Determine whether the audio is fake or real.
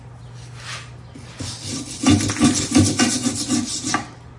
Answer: real